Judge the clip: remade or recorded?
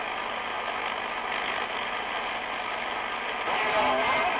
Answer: recorded